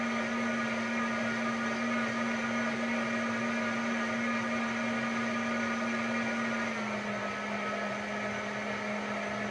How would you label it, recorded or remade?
recorded